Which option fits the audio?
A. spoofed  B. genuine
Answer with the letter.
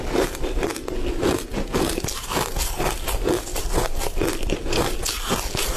B